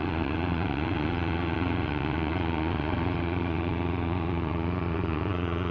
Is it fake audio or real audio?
fake